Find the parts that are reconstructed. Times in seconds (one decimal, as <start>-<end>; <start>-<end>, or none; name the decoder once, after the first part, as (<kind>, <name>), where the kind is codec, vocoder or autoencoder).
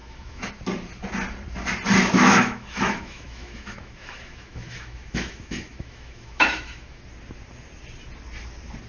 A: 0.0-0.5 (autoencoder, DAC-VAE); 2.0-7.0